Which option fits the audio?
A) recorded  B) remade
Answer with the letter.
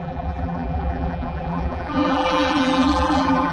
B